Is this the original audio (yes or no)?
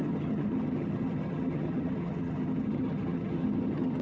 no